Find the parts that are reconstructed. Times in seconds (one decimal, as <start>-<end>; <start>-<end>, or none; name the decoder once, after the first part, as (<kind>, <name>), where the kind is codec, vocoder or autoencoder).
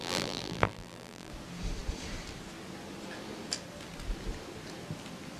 0.0-1.3 (vocoder, BigVGAN v2)